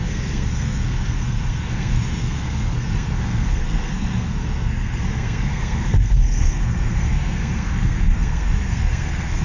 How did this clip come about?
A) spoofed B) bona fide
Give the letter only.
A